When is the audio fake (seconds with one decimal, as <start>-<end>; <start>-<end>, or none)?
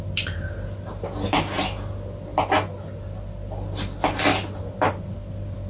none